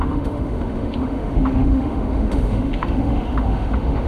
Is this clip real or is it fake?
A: fake